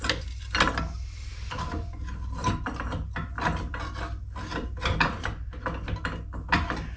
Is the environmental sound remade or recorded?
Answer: recorded